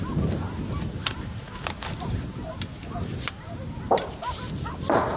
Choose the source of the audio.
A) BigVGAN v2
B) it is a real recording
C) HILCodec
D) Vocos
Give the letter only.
B